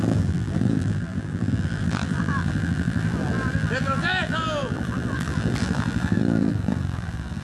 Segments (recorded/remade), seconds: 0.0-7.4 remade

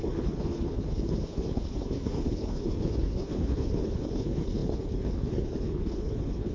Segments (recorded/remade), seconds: 0.0-6.5 remade

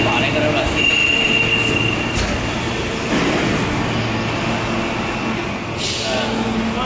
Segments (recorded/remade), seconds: 0.0-1.0 recorded; 1.0-3.5 remade; 3.5-6.9 recorded

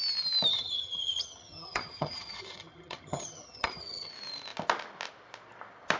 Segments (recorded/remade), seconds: 0.0-0.5 recorded; 0.5-4.1 remade; 4.1-6.0 recorded

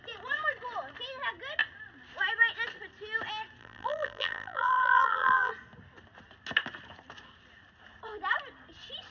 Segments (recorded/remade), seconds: 0.0-3.6 recorded; 3.6-5.5 remade; 5.5-9.1 recorded

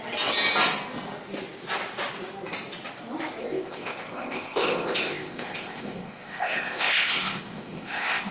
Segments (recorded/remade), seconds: 0.0-3.4 recorded; 3.4-8.3 remade

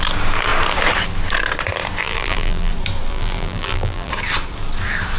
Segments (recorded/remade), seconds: 0.0-2.0 recorded; 2.0-2.7 remade; 2.7-3.1 recorded; 3.1-4.1 remade; 4.1-5.2 recorded